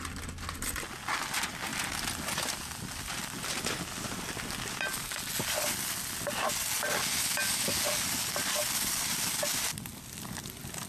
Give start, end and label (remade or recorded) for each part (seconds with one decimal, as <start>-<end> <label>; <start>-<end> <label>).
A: 0.0-10.9 recorded